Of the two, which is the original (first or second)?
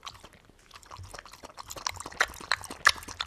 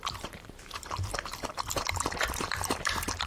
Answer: first